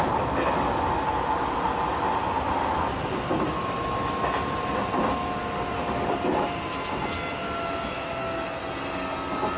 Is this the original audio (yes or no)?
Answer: yes